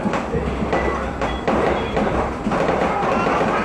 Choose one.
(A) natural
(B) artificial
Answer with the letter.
A